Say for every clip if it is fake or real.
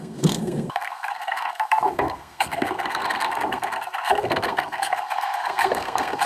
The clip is fake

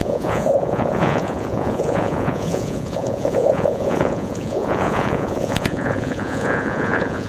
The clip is fake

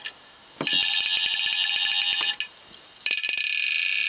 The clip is real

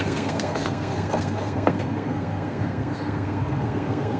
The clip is fake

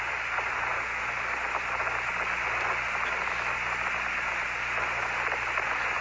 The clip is real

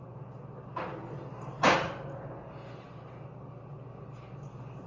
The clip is real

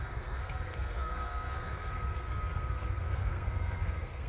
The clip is fake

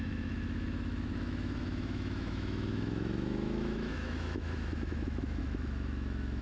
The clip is fake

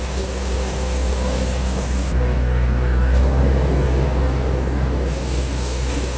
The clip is fake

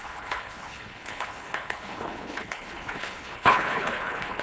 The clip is fake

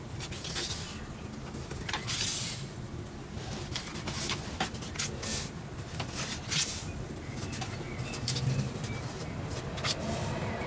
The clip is real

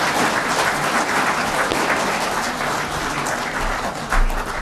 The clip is real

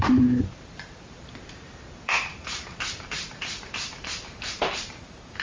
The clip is fake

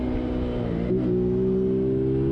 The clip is real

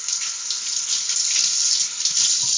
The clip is real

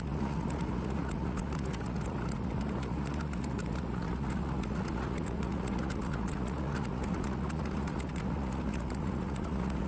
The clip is fake